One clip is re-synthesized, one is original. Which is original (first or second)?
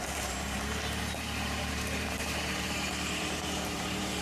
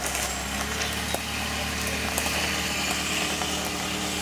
second